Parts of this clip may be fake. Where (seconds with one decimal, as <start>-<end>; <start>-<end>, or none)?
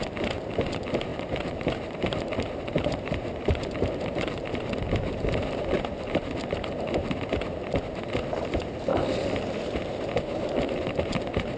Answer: 1.1-4.4